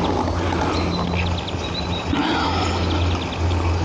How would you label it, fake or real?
real